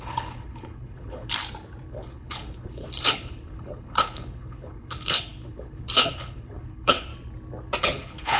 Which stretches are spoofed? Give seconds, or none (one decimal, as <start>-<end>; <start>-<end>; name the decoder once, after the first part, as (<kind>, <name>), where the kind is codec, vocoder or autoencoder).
0.0-1.4 (codec, HILCodec); 1.9-7.1; 7.8-8.4